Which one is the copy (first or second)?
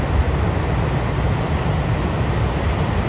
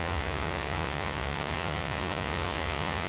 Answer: second